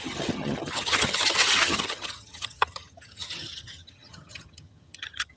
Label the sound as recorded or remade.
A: remade